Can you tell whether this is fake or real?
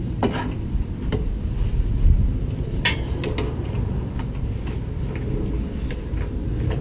real